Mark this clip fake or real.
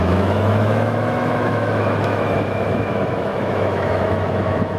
fake